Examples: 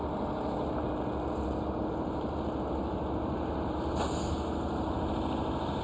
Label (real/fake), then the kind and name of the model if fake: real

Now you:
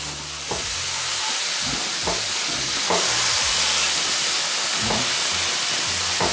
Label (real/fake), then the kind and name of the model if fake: real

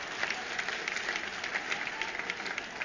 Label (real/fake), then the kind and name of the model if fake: real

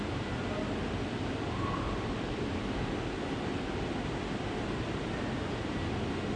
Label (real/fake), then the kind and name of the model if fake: real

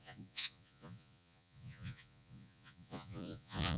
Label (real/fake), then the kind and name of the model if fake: fake, vocoder, Vocos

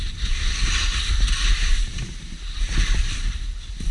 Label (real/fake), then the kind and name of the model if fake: real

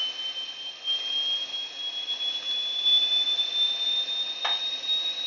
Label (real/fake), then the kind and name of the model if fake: real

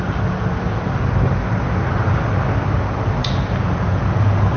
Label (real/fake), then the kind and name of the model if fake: real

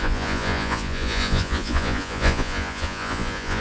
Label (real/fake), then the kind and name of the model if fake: fake, vocoder, Vocos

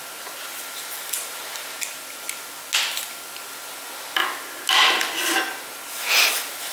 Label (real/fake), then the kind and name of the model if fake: real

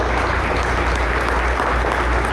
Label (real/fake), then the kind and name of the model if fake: real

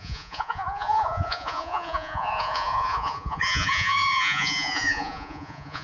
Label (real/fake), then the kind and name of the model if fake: fake, vocoder, Vocos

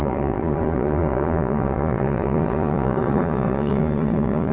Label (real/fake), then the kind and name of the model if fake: fake, vocoder, Vocos